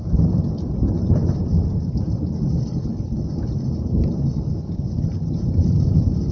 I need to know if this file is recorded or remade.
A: remade